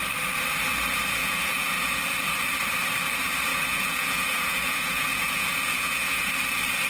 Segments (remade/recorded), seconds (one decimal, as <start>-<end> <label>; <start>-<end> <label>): 0.0-1.2 recorded; 1.2-2.0 remade; 2.0-3.5 recorded; 3.5-6.2 remade; 6.2-6.9 recorded